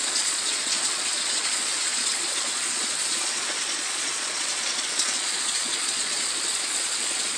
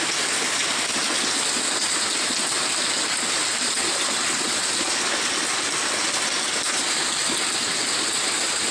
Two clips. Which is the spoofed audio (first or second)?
first